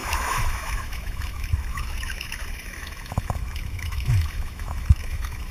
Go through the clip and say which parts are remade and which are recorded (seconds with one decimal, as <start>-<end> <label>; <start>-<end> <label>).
0.0-5.5 remade

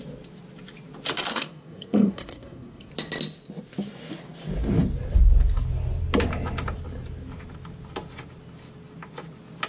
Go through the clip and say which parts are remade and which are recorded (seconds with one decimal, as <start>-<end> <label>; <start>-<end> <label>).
0.0-1.3 recorded; 1.3-2.9 remade; 2.9-9.7 recorded